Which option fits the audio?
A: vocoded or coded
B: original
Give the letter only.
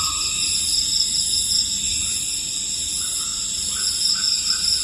B